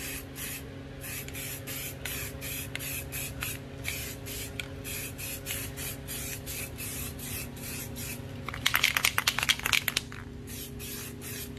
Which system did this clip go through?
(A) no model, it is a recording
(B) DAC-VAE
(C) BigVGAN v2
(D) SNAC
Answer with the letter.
A